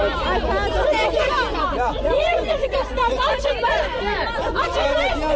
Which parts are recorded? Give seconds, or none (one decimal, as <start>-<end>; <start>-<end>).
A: 0.0-1.5; 4.7-5.4